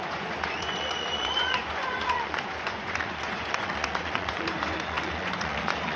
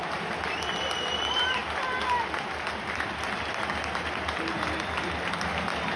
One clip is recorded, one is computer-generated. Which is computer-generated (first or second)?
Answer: first